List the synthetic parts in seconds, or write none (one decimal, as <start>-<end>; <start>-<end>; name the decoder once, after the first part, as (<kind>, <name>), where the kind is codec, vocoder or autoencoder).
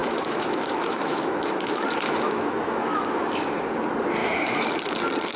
0.0-3.2 (autoencoder, DAC-VAE); 4.2-4.7